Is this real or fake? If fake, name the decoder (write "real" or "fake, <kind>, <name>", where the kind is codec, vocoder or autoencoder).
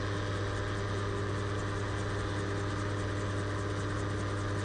real